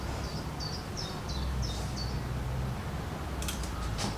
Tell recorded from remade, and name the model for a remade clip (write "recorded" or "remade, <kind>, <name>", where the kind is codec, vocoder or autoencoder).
recorded